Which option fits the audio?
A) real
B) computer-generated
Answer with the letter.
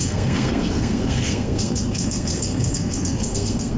B